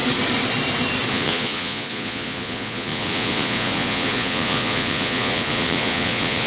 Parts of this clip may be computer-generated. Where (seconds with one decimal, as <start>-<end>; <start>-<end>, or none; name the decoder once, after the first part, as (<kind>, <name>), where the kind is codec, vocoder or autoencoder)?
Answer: 1.1-6.5 (vocoder, Vocos)